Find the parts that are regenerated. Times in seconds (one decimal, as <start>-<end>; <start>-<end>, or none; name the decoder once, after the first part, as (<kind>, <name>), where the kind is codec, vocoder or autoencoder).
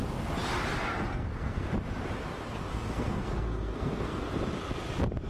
1.1-1.7 (codec, SNAC); 2.7-4.2